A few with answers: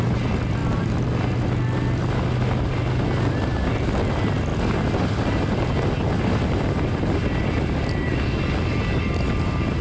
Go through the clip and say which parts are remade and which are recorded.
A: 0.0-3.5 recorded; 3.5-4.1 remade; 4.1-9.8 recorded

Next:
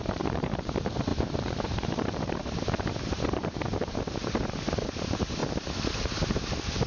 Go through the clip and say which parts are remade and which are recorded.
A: 0.0-5.4 remade; 5.4-5.9 recorded; 5.9-6.9 remade

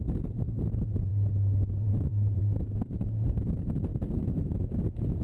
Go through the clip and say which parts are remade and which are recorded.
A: 0.0-1.1 remade; 1.1-1.7 recorded; 1.7-2.4 remade; 2.4-2.9 recorded; 2.9-3.9 remade; 3.9-4.6 recorded; 4.6-5.2 remade

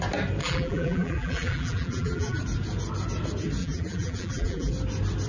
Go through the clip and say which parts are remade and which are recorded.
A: 0.0-0.4 recorded; 0.4-2.4 remade; 2.4-3.6 recorded; 3.6-4.7 remade; 4.7-5.3 recorded

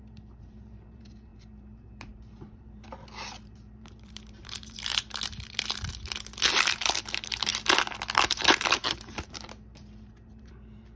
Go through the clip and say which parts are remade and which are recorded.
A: 0.0-4.9 remade; 4.9-6.7 recorded; 6.7-7.5 remade; 7.5-8.1 recorded; 8.1-11.0 remade

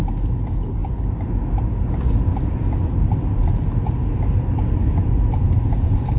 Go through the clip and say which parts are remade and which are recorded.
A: 0.0-0.8 recorded; 0.8-1.4 remade; 1.4-2.3 recorded; 2.3-6.2 remade

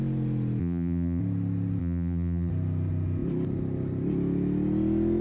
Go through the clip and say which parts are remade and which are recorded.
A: 0.0-0.6 recorded; 0.6-1.2 remade; 1.2-1.8 recorded; 1.8-2.5 remade; 2.5-5.2 recorded